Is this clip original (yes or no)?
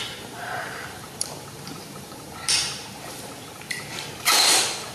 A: no